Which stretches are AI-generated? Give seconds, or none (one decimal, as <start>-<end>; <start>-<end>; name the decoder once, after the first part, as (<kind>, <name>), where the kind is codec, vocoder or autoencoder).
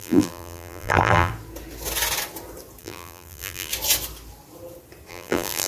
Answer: 0.0-1.3 (vocoder, BigVGAN v2); 2.8-3.7; 5.1-5.7